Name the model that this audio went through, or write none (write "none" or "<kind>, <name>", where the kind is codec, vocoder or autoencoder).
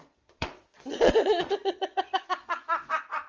vocoder, Vocos